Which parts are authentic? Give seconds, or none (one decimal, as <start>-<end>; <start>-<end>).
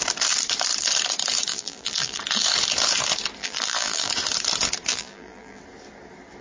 0.0-1.5; 2.2-3.4; 4.1-4.9; 5.6-6.4